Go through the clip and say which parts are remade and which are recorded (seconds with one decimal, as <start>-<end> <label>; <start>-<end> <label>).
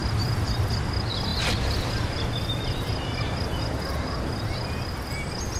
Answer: 0.0-0.7 remade; 0.7-1.3 recorded; 1.3-3.6 remade; 3.6-5.6 recorded